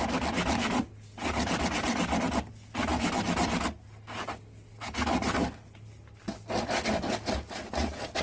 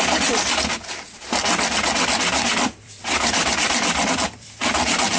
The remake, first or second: second